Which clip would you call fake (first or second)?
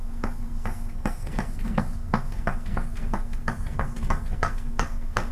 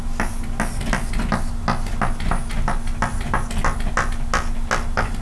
first